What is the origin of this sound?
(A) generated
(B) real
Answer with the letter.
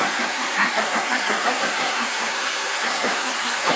A